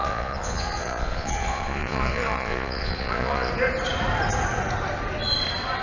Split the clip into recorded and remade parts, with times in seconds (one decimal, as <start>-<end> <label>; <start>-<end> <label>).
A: 0.0-3.5 remade; 3.5-5.8 recorded